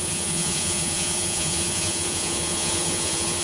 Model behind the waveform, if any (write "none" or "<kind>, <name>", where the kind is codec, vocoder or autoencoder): vocoder, Vocos